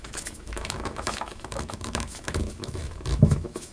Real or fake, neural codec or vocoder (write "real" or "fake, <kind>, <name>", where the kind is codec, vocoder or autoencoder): fake, autoencoder, DAC-VAE